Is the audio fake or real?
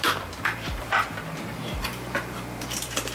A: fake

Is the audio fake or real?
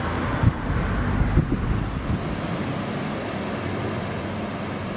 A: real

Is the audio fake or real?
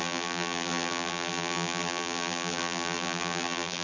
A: fake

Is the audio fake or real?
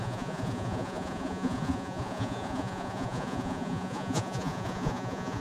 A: fake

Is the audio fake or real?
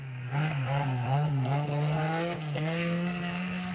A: fake